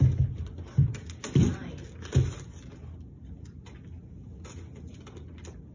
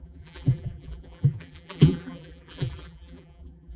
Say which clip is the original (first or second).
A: first